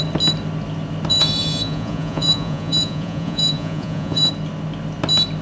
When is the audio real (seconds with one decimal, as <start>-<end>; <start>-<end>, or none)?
0.0-1.1; 4.3-5.4